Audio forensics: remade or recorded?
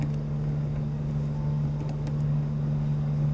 remade